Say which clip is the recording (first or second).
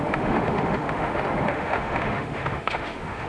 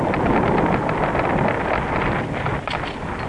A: second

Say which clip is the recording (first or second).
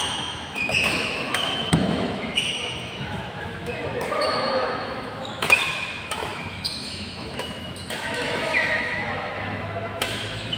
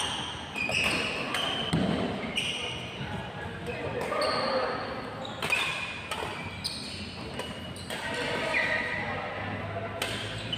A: second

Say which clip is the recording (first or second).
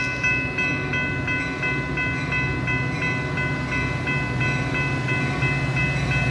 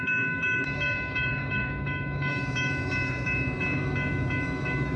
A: first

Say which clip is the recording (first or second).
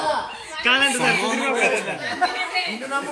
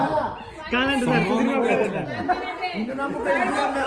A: second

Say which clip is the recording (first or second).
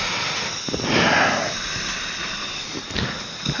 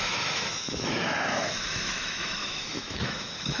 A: first